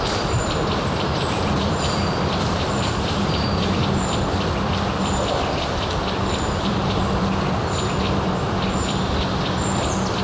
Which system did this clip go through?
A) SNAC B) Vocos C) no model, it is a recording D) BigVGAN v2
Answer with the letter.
D